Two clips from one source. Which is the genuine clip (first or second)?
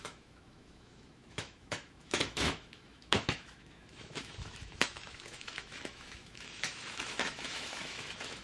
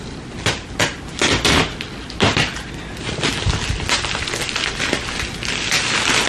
second